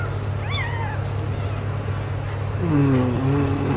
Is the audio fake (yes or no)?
no